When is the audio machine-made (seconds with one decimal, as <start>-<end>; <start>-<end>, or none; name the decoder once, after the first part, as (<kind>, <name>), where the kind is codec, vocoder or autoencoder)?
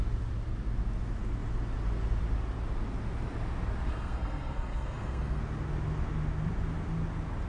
3.9-5.4 (codec, SNAC)